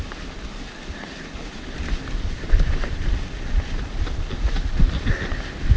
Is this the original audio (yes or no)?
yes